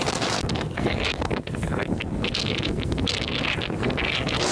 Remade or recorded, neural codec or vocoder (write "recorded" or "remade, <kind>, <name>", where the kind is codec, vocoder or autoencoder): remade, codec, SNAC